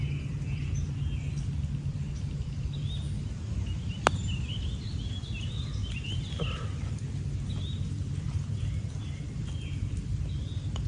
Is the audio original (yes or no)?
yes